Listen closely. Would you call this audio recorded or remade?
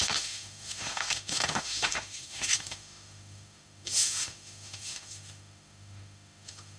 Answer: remade